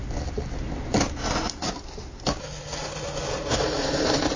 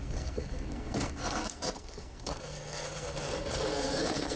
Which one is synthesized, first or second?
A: second